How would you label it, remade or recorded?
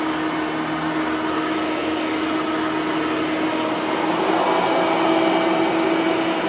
recorded